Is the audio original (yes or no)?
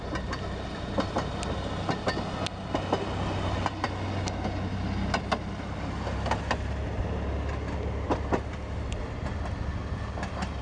yes